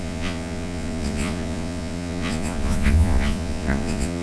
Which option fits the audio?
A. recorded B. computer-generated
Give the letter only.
B